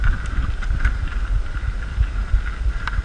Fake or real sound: real